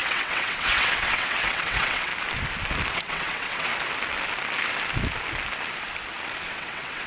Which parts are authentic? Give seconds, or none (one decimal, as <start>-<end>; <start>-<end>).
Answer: 2.1-2.9; 3.7-6.5

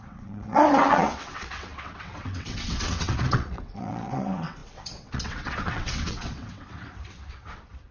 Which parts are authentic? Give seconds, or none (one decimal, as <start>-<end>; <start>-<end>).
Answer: none

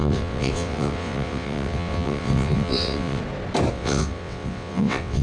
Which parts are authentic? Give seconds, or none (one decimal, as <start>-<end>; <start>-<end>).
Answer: 3.2-3.7

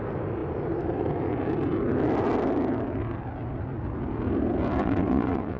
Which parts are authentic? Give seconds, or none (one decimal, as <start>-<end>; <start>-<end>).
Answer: 0.0-4.8

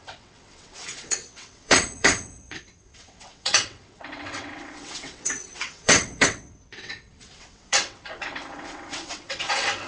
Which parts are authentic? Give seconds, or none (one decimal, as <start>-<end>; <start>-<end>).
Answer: none

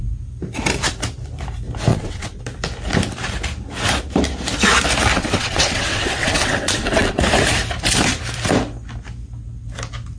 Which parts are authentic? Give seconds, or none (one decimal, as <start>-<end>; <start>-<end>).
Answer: 0.0-1.9; 2.4-5.1; 7.2-10.2